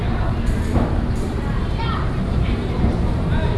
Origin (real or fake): fake